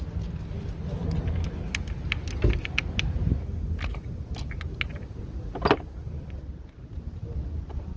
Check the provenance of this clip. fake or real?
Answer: real